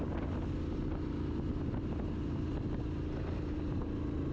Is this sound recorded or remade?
recorded